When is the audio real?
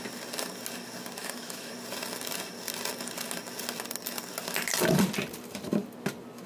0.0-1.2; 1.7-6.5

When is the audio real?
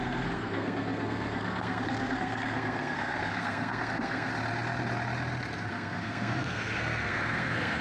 4.3-5.7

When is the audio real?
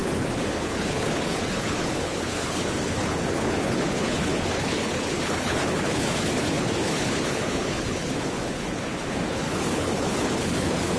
none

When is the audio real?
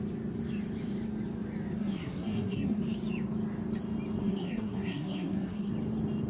0.0-1.8; 2.8-4.2; 5.7-6.3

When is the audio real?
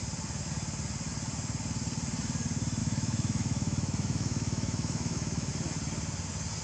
0.0-2.8; 5.5-6.6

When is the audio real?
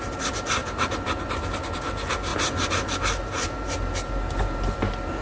0.0-5.2